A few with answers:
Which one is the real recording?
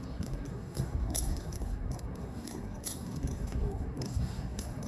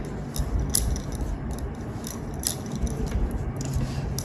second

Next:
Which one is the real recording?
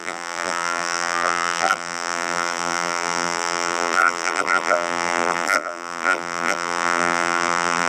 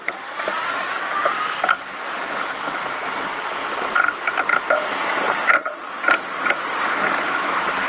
second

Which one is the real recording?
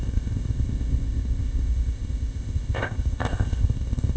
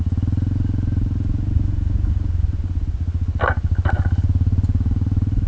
second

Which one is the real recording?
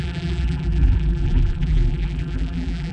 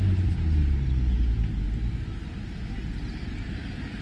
second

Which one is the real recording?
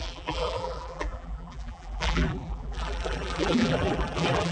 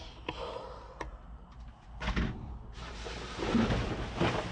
second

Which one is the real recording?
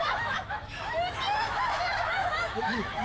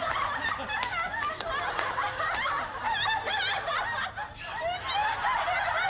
second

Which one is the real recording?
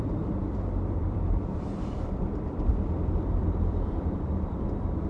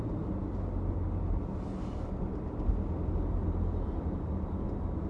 second